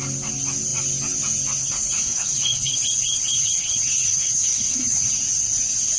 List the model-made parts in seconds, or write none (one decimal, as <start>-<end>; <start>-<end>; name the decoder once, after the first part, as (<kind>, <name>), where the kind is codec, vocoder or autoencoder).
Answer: 1.6-5.1 (codec, HILCodec)

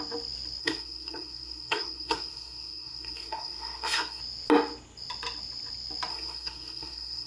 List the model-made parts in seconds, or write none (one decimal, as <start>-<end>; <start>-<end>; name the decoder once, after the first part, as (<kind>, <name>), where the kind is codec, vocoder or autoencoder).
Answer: 0.6-4.2 (codec, SNAC); 6.1-7.3

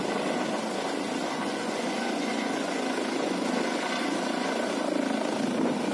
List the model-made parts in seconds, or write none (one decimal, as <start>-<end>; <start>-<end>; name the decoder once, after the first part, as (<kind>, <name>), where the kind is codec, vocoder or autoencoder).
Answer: 1.2-4.7 (vocoder, Vocos)

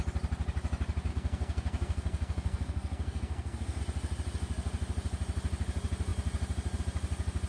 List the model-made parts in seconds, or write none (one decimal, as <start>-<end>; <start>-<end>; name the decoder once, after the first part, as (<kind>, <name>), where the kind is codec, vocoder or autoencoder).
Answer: 1.1-3.8 (codec, SNAC)

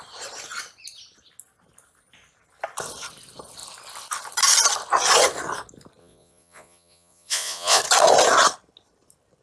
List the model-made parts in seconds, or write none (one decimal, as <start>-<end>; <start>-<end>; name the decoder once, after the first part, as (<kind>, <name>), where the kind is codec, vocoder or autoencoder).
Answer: 6.0-7.8 (vocoder, Vocos)

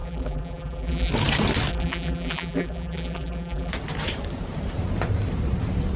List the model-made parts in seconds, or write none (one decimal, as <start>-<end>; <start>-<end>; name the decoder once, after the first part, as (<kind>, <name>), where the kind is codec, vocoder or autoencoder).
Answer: 0.0-1.1 (vocoder, BigVGAN v2); 1.7-3.7

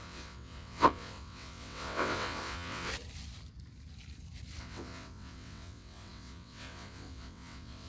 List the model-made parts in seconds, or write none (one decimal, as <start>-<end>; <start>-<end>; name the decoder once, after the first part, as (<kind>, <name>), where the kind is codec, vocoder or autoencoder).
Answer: 0.0-2.9 (vocoder, WaveNeXt); 4.6-7.9